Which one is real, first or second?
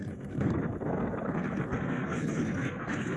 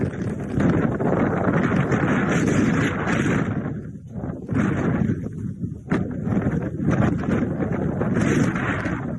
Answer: second